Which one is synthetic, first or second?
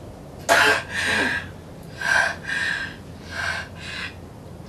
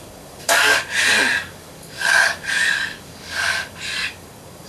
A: second